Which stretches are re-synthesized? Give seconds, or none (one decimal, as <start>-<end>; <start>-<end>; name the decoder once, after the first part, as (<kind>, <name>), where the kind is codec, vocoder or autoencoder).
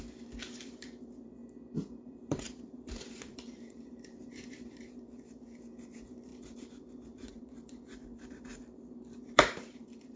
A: 0.0-1.4 (vocoder, BigVGAN v2); 1.9-10.2